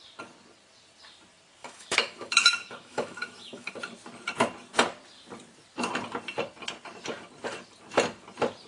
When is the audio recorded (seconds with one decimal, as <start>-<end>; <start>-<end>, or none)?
0.0-1.6; 3.7-8.7